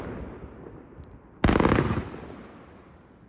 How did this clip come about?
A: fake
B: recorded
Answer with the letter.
B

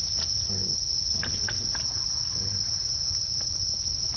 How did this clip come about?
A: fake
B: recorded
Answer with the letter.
B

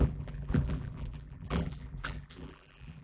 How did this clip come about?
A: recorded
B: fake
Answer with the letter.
B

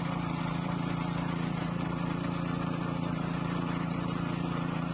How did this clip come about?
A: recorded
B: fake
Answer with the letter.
B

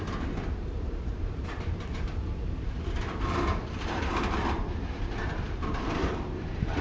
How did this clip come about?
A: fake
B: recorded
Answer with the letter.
A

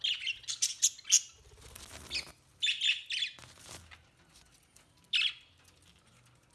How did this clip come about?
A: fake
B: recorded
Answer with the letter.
B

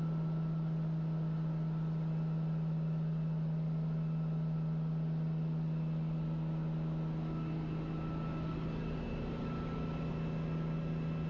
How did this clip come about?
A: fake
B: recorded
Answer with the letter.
B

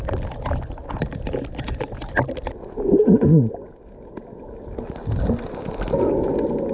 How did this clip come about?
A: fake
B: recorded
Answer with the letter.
B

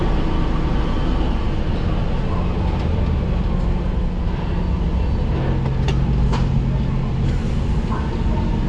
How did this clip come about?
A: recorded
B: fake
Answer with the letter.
A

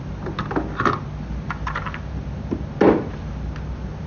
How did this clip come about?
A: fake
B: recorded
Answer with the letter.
B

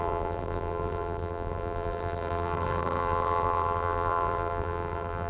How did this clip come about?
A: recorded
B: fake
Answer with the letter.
B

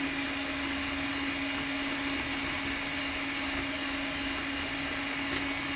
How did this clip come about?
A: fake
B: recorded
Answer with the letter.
B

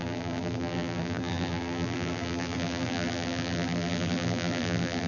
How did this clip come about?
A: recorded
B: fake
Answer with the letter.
B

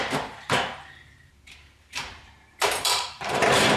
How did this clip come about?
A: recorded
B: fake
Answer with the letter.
B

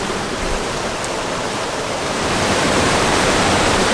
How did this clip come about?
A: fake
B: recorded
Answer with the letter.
A